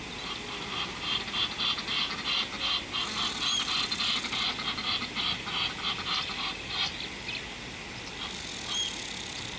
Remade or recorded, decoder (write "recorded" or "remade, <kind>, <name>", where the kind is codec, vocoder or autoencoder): recorded